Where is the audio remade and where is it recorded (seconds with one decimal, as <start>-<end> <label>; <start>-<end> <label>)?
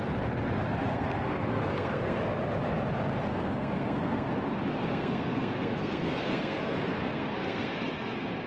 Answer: 0.0-0.9 recorded; 0.9-2.2 remade; 2.2-3.3 recorded; 3.3-4.3 remade; 4.3-4.8 recorded; 4.8-8.5 remade